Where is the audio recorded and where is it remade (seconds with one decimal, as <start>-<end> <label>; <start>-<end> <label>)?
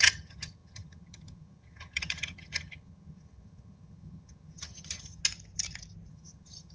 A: 0.0-5.2 remade; 5.2-6.1 recorded; 6.1-6.7 remade